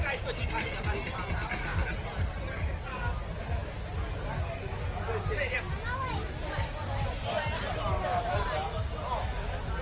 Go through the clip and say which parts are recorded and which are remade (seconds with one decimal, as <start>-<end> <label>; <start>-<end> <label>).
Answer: 0.0-9.8 recorded

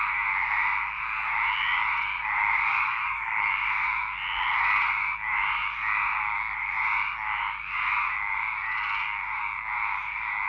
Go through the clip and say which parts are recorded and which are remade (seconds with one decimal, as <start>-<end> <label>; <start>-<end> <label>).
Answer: 0.0-2.7 recorded; 2.7-3.5 remade; 3.5-10.5 recorded